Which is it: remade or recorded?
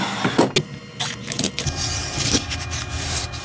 recorded